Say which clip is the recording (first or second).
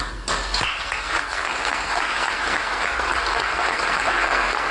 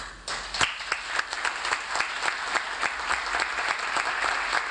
second